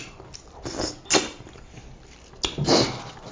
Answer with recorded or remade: recorded